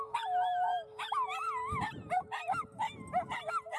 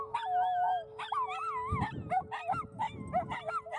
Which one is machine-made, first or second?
first